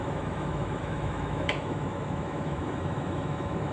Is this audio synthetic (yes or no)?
yes